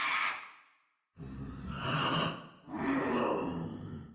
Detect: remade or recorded recorded